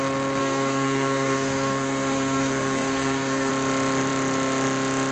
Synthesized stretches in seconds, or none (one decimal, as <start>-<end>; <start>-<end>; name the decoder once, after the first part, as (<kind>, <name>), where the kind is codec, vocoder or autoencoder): 0.4-3.5 (codec, SNAC)